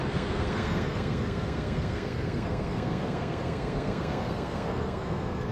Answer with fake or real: fake